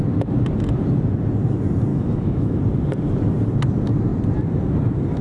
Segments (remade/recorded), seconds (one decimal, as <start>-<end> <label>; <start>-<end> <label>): 0.0-1.9 recorded; 1.9-2.6 remade; 2.6-5.2 recorded